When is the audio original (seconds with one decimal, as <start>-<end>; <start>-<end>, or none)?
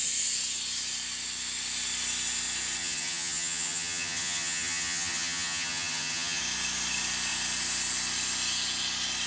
0.0-2.8; 6.4-9.3